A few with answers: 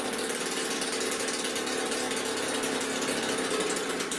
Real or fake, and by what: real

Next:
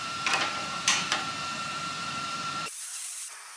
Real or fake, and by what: fake, vocoder, BigVGAN v2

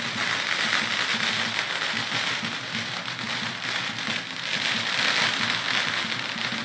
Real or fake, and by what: real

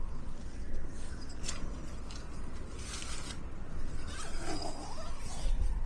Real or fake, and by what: real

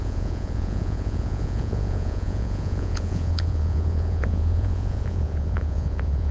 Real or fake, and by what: fake, vocoder, Vocos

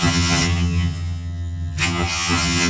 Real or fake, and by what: fake, vocoder, HiFi-GAN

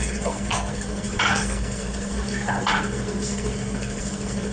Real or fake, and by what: fake, codec, SNAC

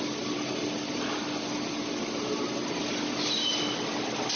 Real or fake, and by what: real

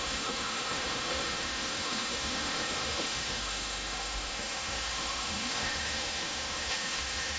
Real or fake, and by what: fake, autoencoder, DAC-VAE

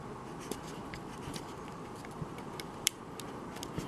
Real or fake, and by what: fake, vocoder, BigVGAN v2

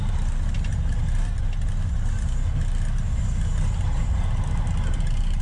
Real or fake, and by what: real